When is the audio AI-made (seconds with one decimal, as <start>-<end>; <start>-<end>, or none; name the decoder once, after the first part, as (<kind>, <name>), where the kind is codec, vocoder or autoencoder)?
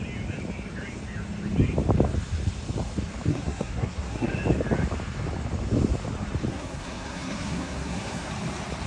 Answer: 3.3-4.3 (codec, SNAC); 6.5-8.3